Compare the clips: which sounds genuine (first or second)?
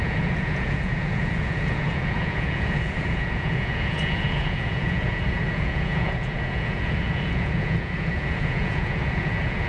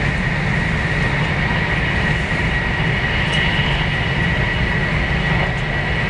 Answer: second